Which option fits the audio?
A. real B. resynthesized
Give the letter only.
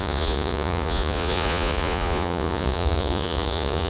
B